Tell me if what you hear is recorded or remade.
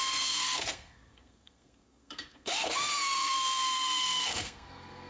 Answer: remade